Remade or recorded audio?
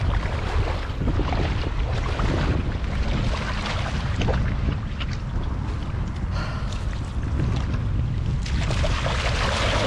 recorded